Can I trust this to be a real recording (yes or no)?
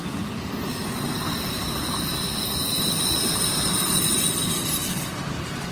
yes